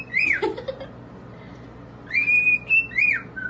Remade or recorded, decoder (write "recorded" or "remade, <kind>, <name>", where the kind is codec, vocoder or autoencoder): recorded